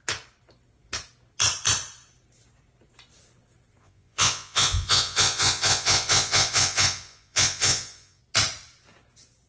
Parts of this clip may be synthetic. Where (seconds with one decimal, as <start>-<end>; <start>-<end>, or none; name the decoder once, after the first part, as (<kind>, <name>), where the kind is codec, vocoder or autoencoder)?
3.8-8.2 (vocoder, Vocos)